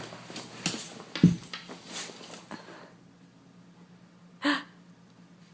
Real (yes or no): yes